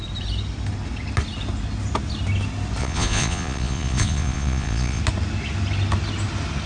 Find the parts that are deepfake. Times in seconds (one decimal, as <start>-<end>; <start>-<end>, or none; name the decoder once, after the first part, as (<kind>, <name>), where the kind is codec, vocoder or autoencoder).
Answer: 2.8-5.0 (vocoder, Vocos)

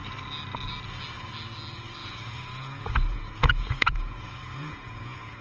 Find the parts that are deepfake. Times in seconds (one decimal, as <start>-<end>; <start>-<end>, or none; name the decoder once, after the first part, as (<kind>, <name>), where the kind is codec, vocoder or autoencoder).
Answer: 2.0-5.4 (vocoder, Vocos)

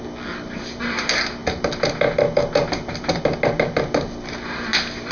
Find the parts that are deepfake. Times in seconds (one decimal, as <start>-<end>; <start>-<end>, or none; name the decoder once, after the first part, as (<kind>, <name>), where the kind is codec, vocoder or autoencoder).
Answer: none